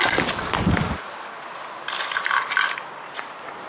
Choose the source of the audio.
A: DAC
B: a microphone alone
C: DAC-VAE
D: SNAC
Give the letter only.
B